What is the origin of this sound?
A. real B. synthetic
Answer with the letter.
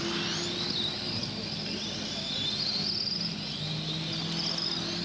A